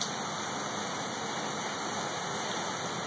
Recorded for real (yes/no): yes